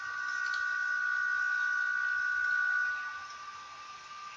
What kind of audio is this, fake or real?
real